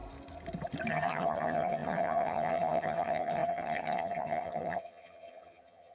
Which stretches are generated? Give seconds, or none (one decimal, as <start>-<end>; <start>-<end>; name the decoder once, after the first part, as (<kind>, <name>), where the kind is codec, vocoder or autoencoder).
0.9-5.9 (vocoder, HiFi-GAN)